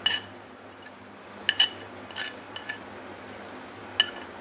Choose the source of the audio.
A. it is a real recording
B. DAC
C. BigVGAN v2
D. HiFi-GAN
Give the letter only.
A